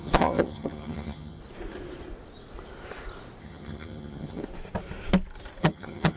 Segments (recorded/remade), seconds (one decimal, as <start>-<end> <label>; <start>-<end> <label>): 0.0-1.4 remade; 1.4-3.4 recorded; 3.4-4.4 remade; 4.4-5.6 recorded; 5.6-6.2 remade